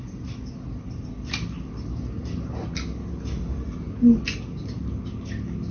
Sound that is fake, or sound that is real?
real